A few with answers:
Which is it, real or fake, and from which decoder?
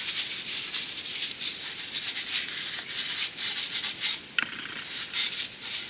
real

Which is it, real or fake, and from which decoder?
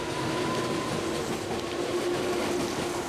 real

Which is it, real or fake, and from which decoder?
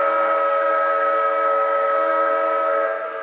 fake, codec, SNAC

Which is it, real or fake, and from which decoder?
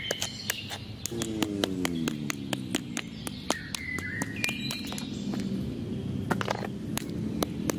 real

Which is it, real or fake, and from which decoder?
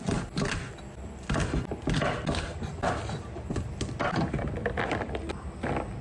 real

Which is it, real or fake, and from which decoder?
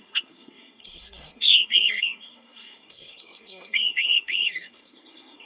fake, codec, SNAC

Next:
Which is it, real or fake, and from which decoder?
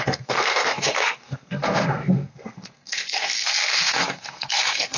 fake, codec, SNAC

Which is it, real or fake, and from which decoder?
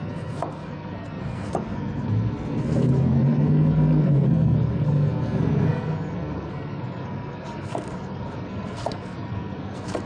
fake, codec, SNAC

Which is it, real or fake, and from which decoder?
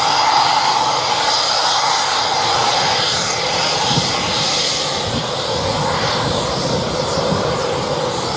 real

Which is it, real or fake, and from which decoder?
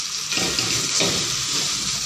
real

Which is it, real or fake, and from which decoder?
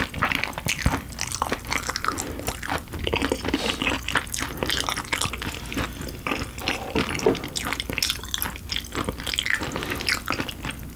real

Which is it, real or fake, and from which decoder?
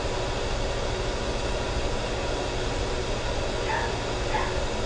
real